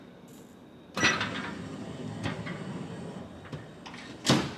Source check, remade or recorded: recorded